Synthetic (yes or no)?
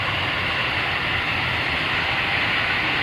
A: no